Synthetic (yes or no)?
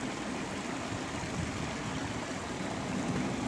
no